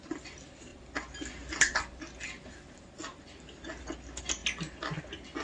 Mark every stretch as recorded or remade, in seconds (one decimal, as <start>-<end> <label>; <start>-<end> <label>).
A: 0.0-5.4 recorded